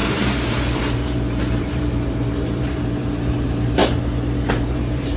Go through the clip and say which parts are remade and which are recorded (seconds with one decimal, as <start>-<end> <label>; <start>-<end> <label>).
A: 0.0-3.8 remade; 3.8-4.5 recorded; 4.5-5.2 remade